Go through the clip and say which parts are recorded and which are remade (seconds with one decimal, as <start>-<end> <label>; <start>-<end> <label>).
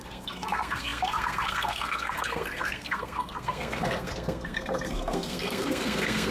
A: 0.0-6.3 remade